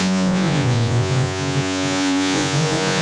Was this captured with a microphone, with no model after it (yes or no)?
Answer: no